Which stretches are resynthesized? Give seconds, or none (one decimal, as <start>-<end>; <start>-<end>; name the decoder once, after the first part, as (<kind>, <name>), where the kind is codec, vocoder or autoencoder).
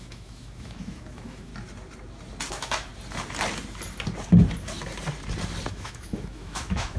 0.0-1.5 (autoencoder, DAC-VAE); 2.5-2.9; 5.7-7.0